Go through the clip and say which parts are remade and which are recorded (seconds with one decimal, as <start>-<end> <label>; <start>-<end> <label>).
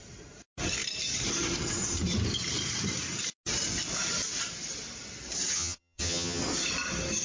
0.0-5.5 recorded; 5.5-6.4 remade; 6.4-7.2 recorded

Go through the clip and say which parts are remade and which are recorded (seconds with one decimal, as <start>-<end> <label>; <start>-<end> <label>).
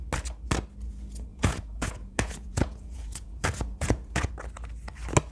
0.0-1.3 recorded; 1.3-4.3 remade; 4.3-5.3 recorded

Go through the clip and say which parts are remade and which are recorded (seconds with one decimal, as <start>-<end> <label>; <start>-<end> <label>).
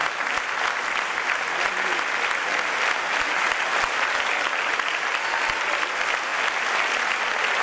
0.0-7.6 recorded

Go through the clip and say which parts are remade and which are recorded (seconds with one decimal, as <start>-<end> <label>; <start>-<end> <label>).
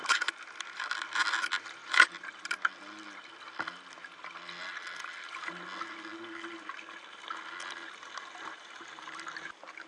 0.0-9.9 recorded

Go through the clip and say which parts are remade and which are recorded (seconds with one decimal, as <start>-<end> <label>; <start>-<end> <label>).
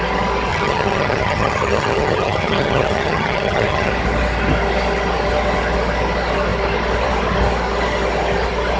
0.0-0.5 recorded; 0.5-3.9 remade; 3.9-8.8 recorded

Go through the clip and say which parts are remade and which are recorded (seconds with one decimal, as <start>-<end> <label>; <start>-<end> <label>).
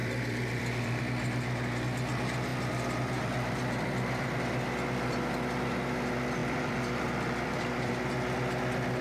0.0-1.0 remade; 1.0-2.5 recorded; 2.5-4.4 remade; 4.4-6.4 recorded; 6.4-7.9 remade; 7.9-9.0 recorded